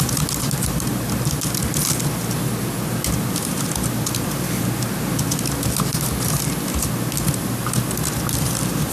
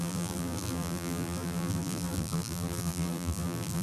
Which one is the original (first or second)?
first